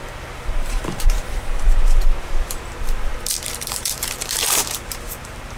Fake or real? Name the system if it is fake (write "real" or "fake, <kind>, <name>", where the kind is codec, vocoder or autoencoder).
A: fake, vocoder, BigVGAN v2